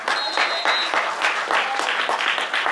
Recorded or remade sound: recorded